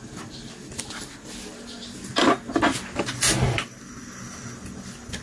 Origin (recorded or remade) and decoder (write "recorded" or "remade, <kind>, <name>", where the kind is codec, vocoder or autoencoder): recorded